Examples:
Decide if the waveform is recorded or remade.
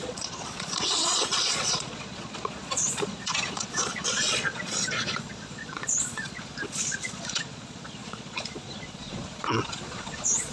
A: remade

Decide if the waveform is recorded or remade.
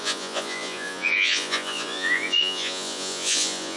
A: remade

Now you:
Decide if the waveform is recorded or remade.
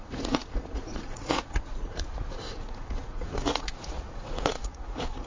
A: remade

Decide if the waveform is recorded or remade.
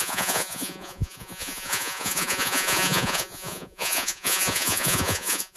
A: remade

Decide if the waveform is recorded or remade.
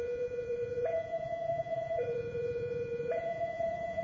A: remade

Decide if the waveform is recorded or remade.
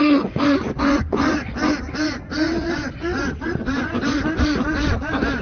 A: remade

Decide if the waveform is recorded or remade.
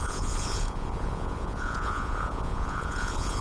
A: remade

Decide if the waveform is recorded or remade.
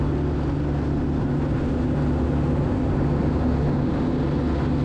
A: recorded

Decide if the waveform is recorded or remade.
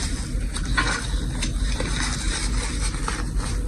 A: recorded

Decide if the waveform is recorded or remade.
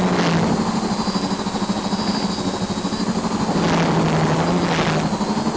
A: recorded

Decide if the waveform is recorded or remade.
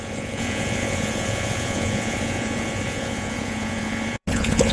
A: remade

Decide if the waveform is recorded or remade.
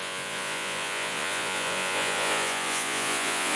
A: remade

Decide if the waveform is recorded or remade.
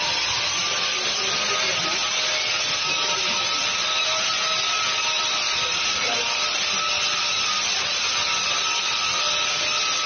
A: recorded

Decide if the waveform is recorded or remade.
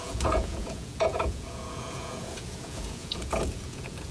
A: remade